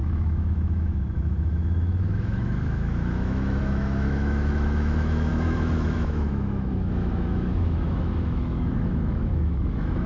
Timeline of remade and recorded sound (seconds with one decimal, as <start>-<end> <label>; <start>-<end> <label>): 0.0-10.1 remade